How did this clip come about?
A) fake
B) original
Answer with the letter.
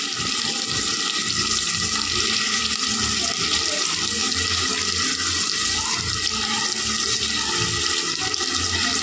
B